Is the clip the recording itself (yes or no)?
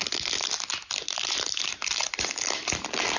yes